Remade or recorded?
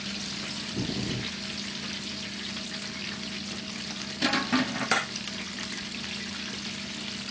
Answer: recorded